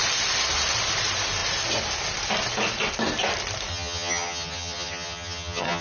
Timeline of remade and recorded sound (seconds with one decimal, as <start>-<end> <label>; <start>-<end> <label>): 0.0-3.7 recorded; 3.7-5.8 remade